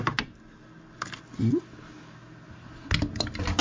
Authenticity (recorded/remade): recorded